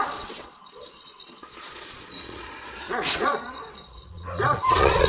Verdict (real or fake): fake